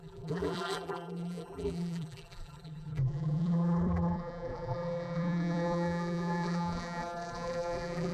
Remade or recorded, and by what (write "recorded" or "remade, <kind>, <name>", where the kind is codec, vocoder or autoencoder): remade, vocoder, BigVGAN v2